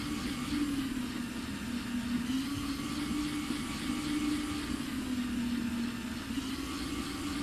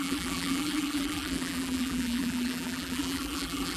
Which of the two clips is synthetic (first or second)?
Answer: second